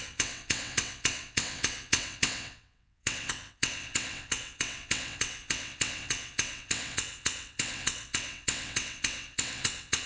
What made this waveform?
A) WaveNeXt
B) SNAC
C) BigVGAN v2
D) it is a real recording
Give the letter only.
A